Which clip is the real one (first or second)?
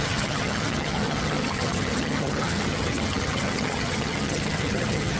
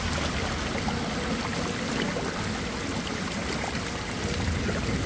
second